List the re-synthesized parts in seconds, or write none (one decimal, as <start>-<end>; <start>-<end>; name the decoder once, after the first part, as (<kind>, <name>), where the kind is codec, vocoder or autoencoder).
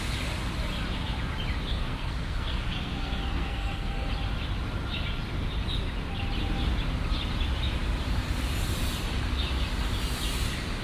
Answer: 1.7-4.1 (codec, SNAC)